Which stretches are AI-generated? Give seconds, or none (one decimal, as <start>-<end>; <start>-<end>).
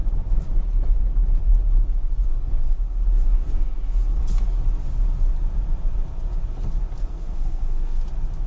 7.0-8.1